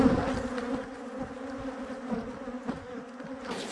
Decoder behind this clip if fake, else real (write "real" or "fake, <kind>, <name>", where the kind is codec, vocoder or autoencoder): real